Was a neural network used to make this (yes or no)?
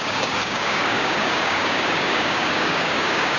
yes